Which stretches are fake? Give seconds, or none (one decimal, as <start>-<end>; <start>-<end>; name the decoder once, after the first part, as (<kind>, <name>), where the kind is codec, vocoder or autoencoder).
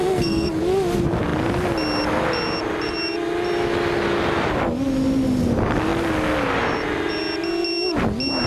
0.0-0.6 (codec, SNAC)